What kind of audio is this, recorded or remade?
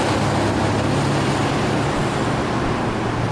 recorded